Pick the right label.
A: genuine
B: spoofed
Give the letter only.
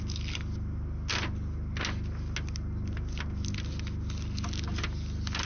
A